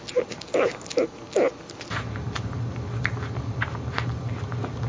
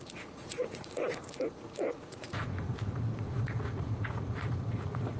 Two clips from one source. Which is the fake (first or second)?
second